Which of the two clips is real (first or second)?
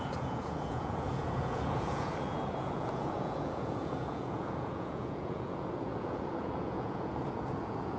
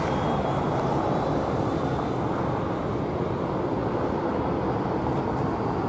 second